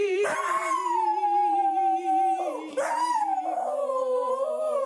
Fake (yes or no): yes